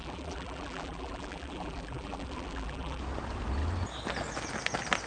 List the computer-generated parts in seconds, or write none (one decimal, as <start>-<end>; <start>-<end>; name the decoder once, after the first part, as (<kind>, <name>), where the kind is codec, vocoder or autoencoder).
0.0-3.0 (vocoder, BigVGAN v2)